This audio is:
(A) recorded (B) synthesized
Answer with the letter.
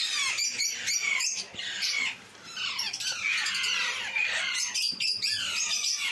A